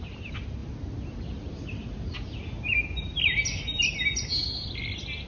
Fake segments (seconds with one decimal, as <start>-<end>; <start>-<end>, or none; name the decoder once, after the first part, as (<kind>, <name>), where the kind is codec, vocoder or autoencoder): none